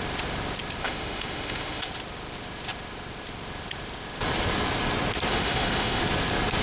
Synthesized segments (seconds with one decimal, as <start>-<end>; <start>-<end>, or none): 0.8-1.9; 5.3-6.0